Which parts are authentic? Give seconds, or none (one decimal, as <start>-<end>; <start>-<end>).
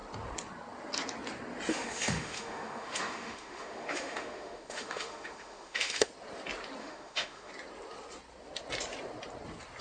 0.0-1.7; 6.1-6.8; 7.5-9.8